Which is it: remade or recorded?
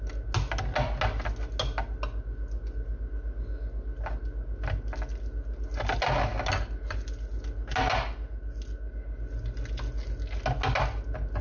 recorded